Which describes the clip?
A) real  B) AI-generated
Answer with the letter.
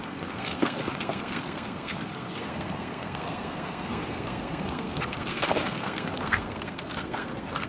B